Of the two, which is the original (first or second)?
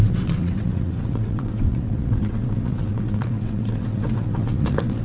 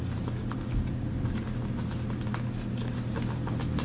second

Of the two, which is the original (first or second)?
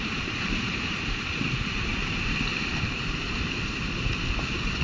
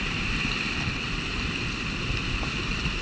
second